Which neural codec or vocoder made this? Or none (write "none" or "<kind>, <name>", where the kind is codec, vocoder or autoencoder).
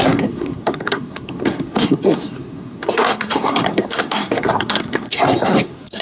codec, SNAC